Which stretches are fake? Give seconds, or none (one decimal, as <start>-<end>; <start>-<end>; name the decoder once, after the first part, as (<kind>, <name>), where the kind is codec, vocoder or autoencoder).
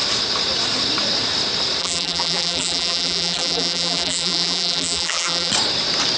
1.8-5.5 (vocoder, BigVGAN v2)